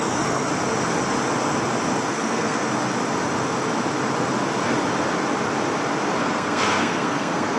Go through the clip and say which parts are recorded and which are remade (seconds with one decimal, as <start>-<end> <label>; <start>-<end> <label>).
0.0-0.5 remade; 0.5-2.1 recorded; 2.1-2.7 remade; 2.7-6.2 recorded; 6.2-7.6 remade